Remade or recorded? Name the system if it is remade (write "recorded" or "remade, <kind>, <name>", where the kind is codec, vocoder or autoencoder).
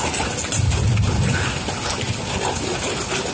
recorded